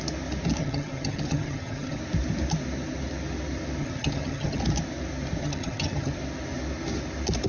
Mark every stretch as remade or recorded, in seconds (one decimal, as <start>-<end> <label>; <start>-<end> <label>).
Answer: 0.0-0.6 recorded; 0.6-2.0 remade; 2.0-3.8 recorded; 3.8-4.6 remade; 4.6-5.4 recorded; 5.4-6.1 remade; 6.1-7.5 recorded